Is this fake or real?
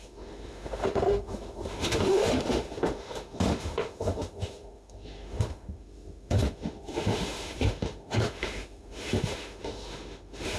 fake